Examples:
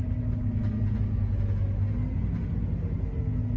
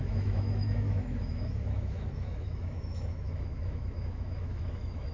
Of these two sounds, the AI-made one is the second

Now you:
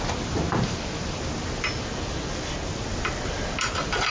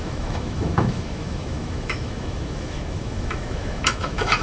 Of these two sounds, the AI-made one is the second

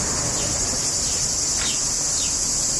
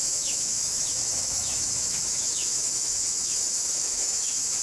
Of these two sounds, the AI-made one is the second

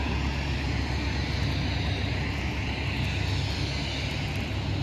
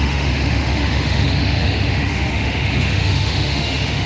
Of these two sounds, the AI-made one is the second